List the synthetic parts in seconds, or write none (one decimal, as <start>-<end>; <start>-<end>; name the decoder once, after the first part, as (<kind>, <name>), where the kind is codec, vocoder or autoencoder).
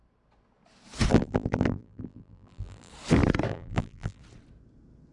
1.1-2.9 (vocoder, BigVGAN v2); 3.5-4.2